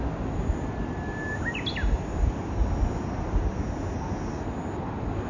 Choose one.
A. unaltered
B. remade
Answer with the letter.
A